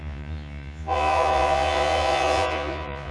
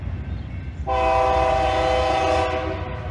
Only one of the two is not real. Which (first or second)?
first